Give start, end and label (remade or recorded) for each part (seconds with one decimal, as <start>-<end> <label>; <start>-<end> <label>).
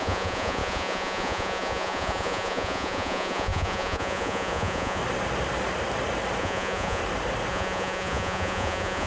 0.0-5.0 remade; 5.0-6.4 recorded; 6.4-7.0 remade; 7.0-7.5 recorded; 7.5-9.1 remade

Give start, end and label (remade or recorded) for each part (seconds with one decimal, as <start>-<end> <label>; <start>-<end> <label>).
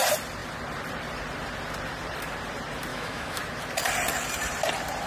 0.0-2.9 recorded; 2.9-3.4 remade; 3.4-5.1 recorded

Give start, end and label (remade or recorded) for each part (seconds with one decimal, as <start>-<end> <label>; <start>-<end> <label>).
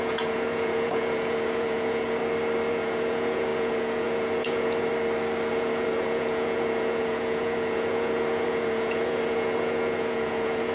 0.0-2.2 remade; 2.2-2.7 recorded; 2.7-4.9 remade; 4.9-5.5 recorded; 5.5-10.7 remade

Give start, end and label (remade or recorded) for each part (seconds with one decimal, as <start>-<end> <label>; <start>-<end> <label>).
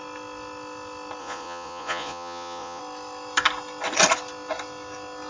0.0-1.2 recorded; 1.2-2.8 remade; 2.8-5.3 recorded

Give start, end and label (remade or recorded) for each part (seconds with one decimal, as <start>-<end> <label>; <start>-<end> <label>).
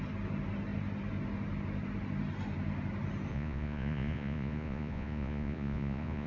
0.0-3.3 recorded; 3.3-6.3 remade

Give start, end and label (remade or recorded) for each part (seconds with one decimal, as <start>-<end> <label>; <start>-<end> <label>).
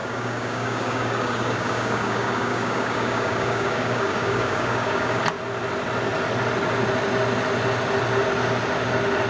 0.0-5.2 remade; 5.2-9.3 recorded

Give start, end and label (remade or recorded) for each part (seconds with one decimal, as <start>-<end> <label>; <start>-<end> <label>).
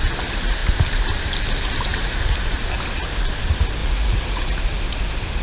0.0-3.8 recorded; 3.8-4.6 remade; 4.6-5.4 recorded